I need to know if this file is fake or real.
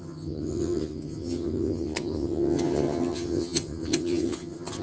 fake